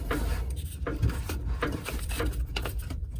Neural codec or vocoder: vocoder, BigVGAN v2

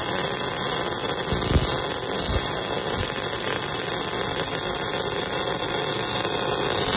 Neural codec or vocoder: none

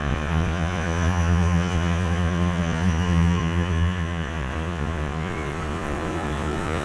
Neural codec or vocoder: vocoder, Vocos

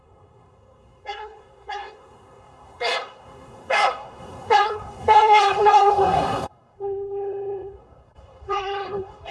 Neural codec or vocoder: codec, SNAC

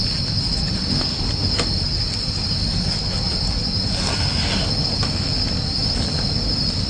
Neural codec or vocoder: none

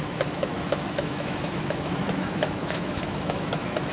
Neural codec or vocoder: autoencoder, DAC-VAE